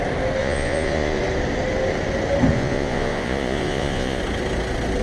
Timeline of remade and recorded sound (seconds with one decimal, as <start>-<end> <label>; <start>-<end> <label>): 0.0-0.4 recorded; 0.4-1.2 remade; 1.2-2.5 recorded; 2.5-4.2 remade; 4.2-5.0 recorded